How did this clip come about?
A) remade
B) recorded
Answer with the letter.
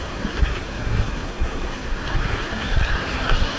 A